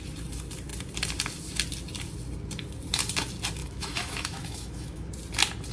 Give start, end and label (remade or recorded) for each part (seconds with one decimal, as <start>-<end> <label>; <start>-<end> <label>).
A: 0.0-3.6 recorded; 3.6-5.1 remade; 5.1-5.7 recorded